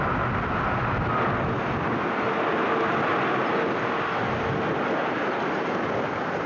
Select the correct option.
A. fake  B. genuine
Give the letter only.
B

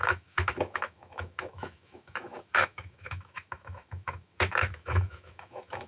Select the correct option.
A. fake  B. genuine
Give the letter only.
A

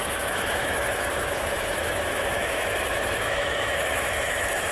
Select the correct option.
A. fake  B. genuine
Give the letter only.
A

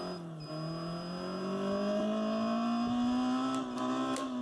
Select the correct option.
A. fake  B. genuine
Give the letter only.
B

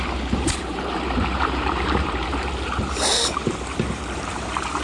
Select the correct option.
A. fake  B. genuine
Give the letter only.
A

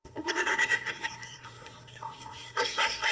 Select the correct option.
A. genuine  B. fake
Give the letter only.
B